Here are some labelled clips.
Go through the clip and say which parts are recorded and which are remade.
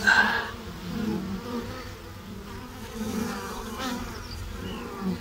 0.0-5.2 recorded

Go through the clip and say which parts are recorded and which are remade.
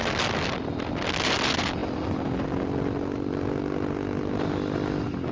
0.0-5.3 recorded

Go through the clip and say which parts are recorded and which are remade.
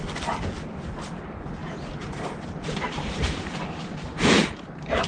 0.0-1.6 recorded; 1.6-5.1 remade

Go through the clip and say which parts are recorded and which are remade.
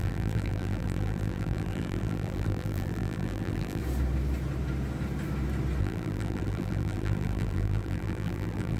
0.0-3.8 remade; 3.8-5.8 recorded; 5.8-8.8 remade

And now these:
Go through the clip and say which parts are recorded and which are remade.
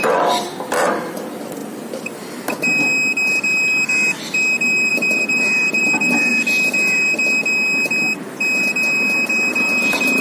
0.0-1.6 remade; 1.6-4.9 recorded; 4.9-6.3 remade; 6.3-9.5 recorded; 9.5-10.2 remade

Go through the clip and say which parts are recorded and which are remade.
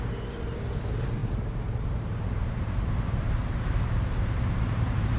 0.0-5.2 remade